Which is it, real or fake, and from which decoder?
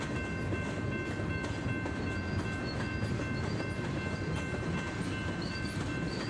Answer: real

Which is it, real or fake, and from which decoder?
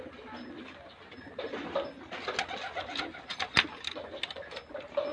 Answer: real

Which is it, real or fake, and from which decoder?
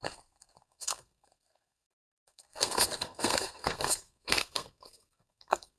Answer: fake, codec, SNAC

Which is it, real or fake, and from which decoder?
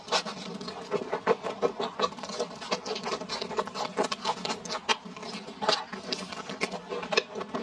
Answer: real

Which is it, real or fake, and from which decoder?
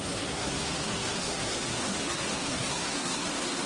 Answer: fake, codec, SNAC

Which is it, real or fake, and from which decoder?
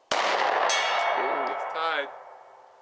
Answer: real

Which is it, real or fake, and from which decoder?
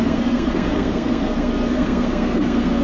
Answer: fake, codec, SNAC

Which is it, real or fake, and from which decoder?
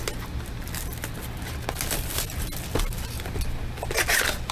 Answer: real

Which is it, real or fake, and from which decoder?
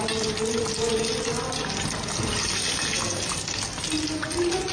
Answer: real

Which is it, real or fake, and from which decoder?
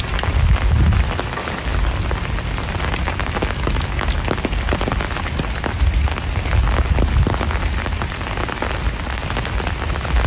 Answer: real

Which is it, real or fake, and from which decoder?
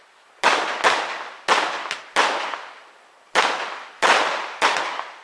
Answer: real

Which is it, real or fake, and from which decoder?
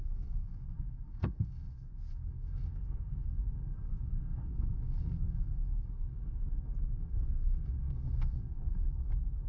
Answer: fake, codec, SNAC